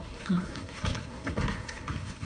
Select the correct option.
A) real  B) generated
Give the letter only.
B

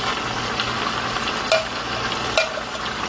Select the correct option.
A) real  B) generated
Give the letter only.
A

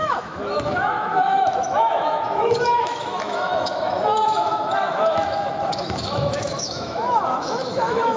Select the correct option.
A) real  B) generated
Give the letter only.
B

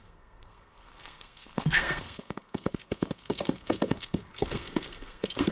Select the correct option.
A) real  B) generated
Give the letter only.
B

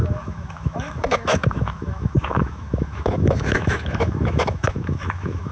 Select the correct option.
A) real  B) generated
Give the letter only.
B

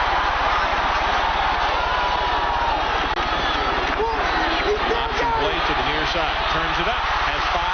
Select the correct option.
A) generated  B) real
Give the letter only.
B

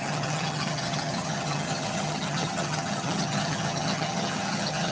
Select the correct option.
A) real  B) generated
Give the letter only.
B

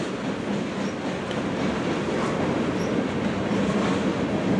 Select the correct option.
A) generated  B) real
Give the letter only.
B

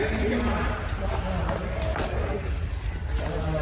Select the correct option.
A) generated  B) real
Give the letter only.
B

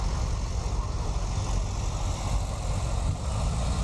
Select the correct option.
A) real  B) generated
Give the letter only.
A